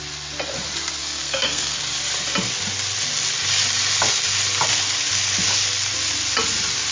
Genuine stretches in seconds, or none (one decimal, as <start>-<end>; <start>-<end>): 0.0-1.0; 1.8-6.9

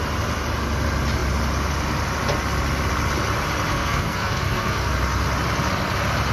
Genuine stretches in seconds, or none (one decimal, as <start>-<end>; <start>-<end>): 0.0-3.7; 4.9-6.3

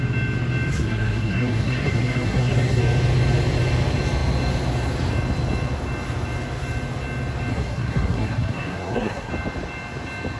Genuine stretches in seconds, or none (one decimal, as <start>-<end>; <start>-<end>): 0.0-0.7; 2.8-7.5; 9.3-10.4

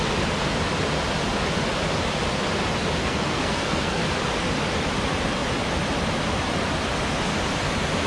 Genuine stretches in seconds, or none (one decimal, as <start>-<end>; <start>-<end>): 0.0-3.0; 4.0-8.1

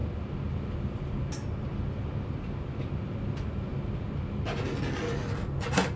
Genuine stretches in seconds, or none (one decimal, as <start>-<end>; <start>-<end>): 0.0-6.0

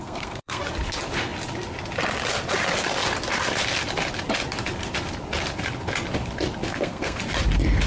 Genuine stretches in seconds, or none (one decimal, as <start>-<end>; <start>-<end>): 0.6-6.7; 7.2-7.9

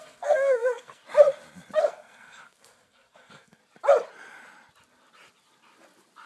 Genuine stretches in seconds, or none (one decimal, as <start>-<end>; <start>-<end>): 1.0-1.8; 3.6-6.3